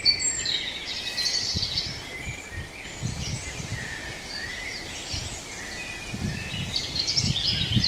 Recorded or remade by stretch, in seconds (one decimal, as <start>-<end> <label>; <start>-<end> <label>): 0.0-0.8 remade; 0.8-2.2 recorded; 2.2-4.7 remade; 4.7-6.8 recorded; 6.8-7.9 remade